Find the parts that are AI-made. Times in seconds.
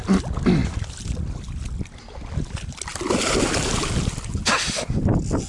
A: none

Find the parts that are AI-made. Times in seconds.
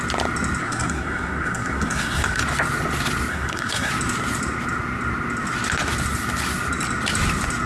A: 0.6-2.4 (codec, SNAC); 3.3-3.9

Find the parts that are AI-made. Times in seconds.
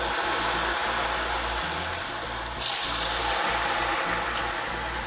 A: none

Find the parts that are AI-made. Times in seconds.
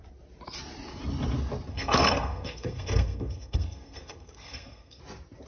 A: 1.7-5.0 (codec, SNAC)